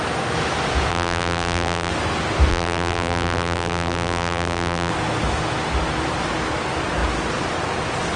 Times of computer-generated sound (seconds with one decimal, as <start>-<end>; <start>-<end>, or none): 0.9-1.9; 2.5-4.9